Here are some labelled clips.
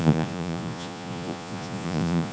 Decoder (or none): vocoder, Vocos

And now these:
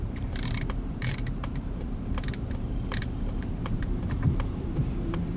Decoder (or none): vocoder, BigVGAN v2